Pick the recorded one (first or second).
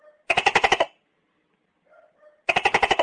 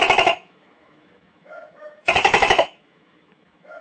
first